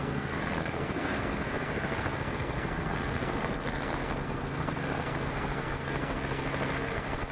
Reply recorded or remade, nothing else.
remade